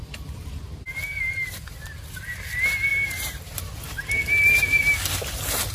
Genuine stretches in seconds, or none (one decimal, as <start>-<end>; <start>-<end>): 0.6-2.9; 3.7-5.7